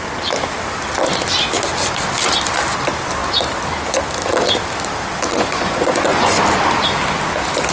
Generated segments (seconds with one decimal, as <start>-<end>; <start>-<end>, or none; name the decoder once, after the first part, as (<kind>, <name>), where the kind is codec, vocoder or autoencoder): 5.3-6.4 (vocoder, Vocos)